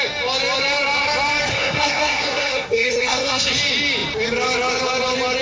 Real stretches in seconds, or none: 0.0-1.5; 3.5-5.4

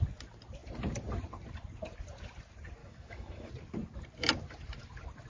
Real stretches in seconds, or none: 0.0-2.8; 3.5-5.3

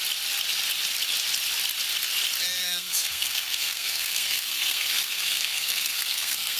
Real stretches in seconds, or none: 0.0-2.6